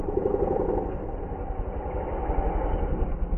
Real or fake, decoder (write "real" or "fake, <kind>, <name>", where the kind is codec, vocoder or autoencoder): real